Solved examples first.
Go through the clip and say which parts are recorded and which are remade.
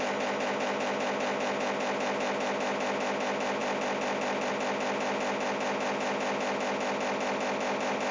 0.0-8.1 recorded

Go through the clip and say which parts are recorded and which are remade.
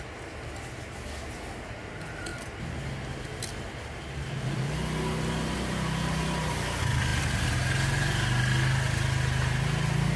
0.0-10.2 recorded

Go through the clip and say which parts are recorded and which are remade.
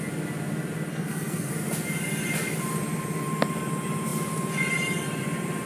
0.0-0.9 recorded; 0.9-1.5 remade; 1.5-5.7 recorded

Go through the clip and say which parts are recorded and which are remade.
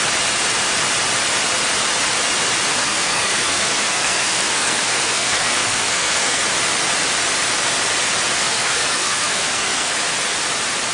0.0-2.8 recorded; 2.8-6.4 remade; 6.4-8.4 recorded; 8.4-9.9 remade; 9.9-10.9 recorded